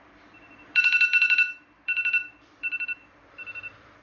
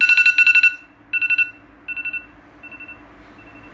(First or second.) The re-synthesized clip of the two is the first